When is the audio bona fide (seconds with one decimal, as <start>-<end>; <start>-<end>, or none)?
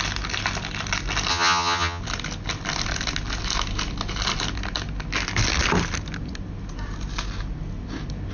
0.0-1.3; 2.0-8.3